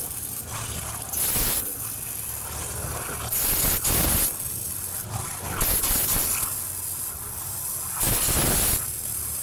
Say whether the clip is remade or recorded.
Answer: recorded